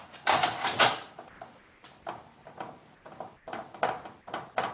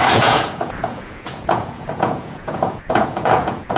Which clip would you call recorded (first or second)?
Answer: first